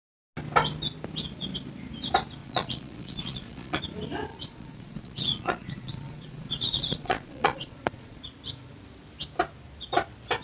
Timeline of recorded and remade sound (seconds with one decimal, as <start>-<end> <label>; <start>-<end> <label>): 0.0-2.4 recorded; 2.4-3.8 remade; 3.8-4.3 recorded; 4.3-8.2 remade; 8.2-10.4 recorded